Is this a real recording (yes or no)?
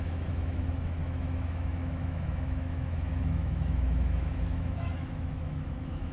no